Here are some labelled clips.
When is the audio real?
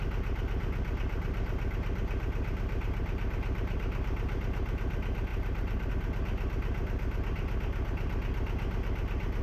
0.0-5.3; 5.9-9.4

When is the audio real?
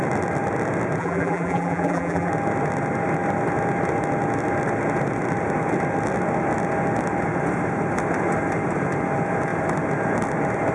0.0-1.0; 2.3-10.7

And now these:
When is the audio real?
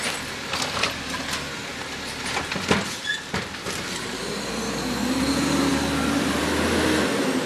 0.0-7.5